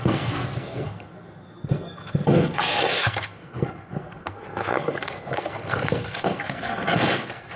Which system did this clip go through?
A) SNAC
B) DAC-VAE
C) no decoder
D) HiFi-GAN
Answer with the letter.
A